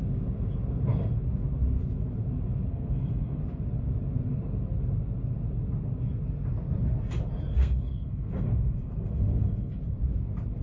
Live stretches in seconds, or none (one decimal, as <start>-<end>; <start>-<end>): 0.0-2.7; 3.4-7.5; 9.7-10.6